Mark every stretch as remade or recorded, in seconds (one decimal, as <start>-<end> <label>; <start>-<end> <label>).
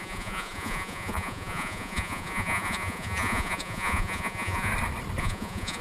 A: 0.0-4.7 remade; 4.7-5.2 recorded; 5.2-5.8 remade